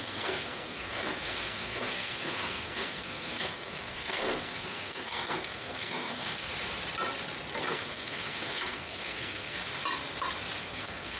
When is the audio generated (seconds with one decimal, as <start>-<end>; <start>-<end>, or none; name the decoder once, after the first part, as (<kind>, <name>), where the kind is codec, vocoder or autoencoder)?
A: 0.0-6.5 (codec, SNAC); 7.6-9.6; 10.5-11.2